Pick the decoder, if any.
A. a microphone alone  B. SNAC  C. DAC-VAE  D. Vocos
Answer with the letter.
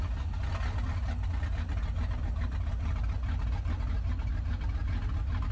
A